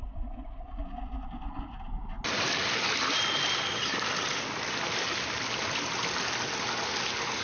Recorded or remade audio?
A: recorded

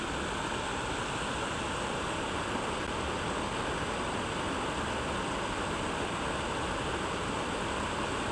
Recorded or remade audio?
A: recorded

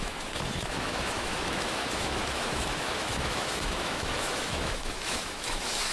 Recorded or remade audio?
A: remade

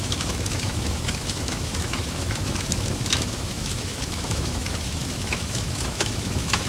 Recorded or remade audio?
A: remade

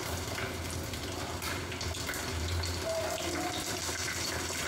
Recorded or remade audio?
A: recorded